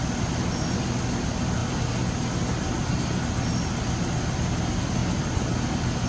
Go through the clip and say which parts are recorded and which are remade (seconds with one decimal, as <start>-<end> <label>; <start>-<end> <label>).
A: 0.0-6.1 recorded